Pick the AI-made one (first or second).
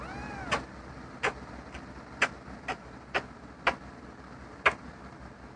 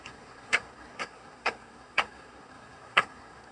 second